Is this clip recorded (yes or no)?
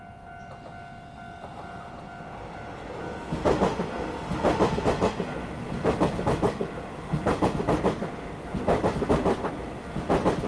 yes